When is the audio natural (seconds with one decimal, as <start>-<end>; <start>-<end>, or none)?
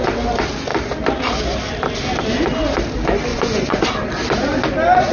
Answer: 0.0-3.3; 3.8-5.1